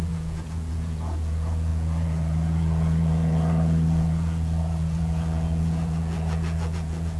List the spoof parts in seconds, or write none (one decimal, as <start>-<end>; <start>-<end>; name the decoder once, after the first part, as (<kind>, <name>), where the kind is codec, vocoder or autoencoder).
0.0-7.2 (vocoder, Vocos)